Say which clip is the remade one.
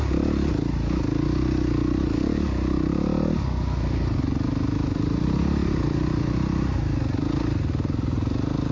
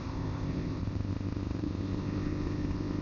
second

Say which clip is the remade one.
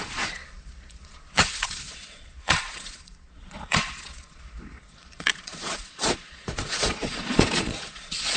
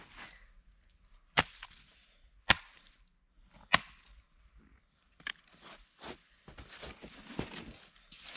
first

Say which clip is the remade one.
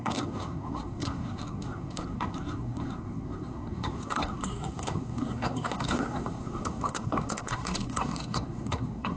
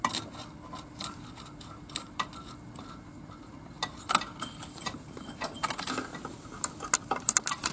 first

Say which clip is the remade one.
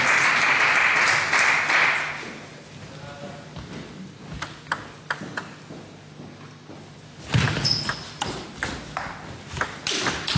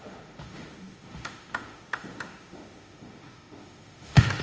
second